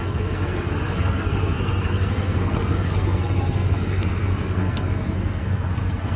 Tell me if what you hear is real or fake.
fake